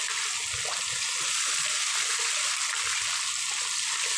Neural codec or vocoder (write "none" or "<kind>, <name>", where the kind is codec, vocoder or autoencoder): none